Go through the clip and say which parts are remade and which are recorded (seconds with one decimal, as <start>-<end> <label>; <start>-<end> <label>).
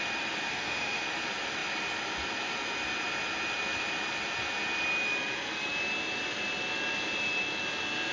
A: 0.0-0.5 recorded; 0.5-1.0 remade; 1.0-8.1 recorded